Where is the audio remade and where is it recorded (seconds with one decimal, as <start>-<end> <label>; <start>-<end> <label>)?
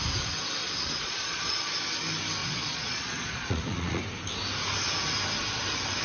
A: 0.0-0.6 recorded; 0.6-1.7 remade; 1.7-2.4 recorded; 2.4-4.0 remade; 4.0-6.0 recorded